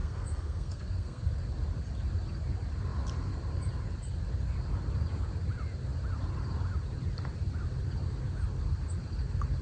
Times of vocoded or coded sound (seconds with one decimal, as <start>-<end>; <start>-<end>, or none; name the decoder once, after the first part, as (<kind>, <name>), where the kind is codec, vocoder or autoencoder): 0.0-1.3 (codec, SNAC)